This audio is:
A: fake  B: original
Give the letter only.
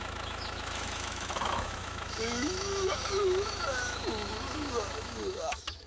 A